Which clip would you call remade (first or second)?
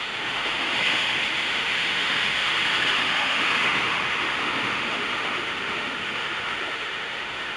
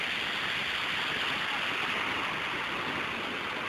first